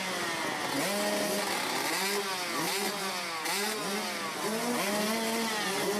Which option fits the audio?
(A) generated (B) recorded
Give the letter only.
B